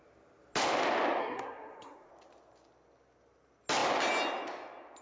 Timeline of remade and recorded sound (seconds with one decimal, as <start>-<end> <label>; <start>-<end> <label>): 0.0-1.2 recorded; 1.2-2.1 remade; 2.1-5.0 recorded